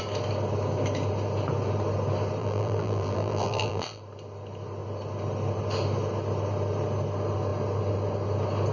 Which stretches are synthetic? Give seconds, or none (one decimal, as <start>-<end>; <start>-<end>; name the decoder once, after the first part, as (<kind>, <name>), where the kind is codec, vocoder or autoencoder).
2.4-4.0 (vocoder, BigVGAN v2)